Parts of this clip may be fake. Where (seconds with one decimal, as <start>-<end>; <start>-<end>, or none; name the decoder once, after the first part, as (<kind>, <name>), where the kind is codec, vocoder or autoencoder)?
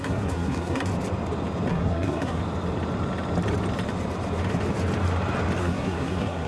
0.0-0.9 (codec, SNAC); 1.7-2.4; 5.6-6.5